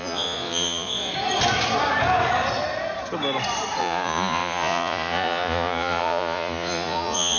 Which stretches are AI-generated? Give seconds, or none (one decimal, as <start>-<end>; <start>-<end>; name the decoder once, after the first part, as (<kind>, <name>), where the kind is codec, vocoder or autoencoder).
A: 0.0-1.1 (vocoder, Vocos); 3.8-7.4